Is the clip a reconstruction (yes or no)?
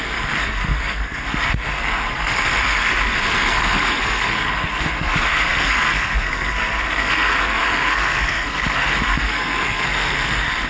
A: yes